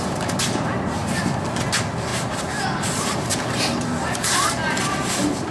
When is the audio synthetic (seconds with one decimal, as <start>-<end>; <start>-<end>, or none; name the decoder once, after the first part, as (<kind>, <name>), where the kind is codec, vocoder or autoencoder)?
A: 2.1-3.4 (vocoder, BigVGAN v2)